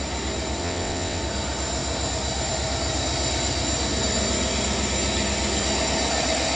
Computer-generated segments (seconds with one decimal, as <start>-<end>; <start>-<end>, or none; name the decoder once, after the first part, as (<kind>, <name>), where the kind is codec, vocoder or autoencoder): 0.6-1.2 (vocoder, WaveNeXt)